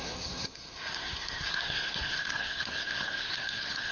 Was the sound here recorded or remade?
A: remade